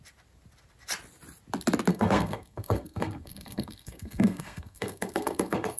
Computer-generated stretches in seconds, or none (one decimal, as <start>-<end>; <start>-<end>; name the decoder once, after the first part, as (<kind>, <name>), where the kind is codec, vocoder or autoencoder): 1.9-5.8 (codec, SNAC)